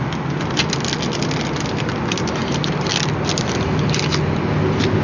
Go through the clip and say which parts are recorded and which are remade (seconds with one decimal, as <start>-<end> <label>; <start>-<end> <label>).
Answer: 0.0-2.4 recorded; 2.4-2.9 remade; 2.9-5.0 recorded